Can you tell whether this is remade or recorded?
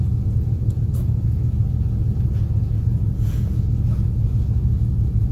remade